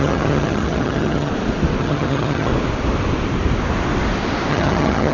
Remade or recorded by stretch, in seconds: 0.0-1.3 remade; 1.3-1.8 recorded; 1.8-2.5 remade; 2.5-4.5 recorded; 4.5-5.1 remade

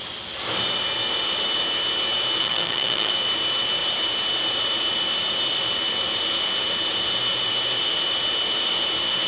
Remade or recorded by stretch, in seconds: 0.0-2.4 recorded; 2.4-3.1 remade; 3.1-9.3 recorded